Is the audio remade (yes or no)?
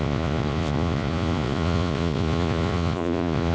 yes